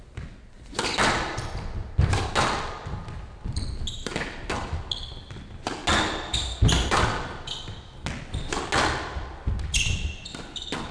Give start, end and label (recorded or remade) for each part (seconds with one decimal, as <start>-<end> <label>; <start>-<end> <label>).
0.0-10.9 recorded